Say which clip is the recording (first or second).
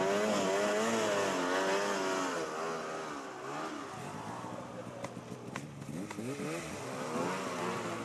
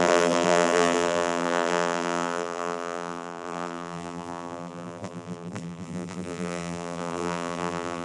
first